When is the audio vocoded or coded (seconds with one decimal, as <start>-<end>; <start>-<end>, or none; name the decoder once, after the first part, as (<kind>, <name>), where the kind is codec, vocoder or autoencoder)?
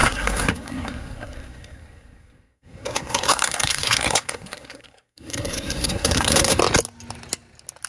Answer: 0.0-6.6 (codec, SNAC)